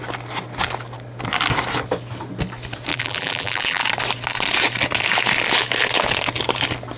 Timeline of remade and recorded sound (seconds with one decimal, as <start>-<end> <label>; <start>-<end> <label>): 0.0-2.9 recorded; 2.9-3.8 remade; 3.8-7.0 recorded